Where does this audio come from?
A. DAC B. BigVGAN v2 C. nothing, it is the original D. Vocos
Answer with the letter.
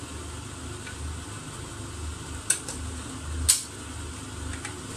C